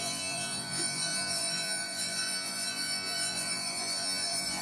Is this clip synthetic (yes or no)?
yes